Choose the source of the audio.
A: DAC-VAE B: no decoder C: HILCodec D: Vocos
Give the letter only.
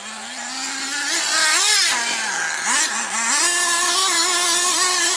B